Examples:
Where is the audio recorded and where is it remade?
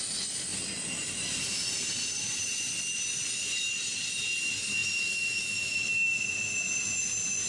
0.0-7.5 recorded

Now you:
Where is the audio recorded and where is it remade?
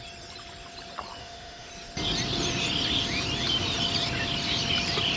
0.0-1.2 recorded; 1.2-1.7 remade; 1.7-5.2 recorded